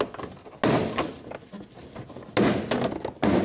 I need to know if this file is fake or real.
real